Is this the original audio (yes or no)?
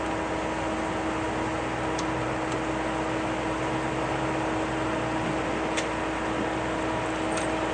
yes